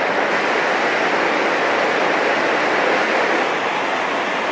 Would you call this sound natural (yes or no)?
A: yes